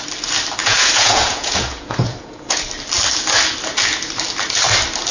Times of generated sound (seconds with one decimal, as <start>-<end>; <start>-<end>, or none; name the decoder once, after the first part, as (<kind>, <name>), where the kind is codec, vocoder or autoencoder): 0.6-2.6 (vocoder, Vocos)